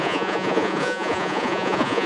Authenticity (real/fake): fake